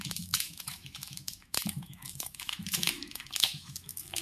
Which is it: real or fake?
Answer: fake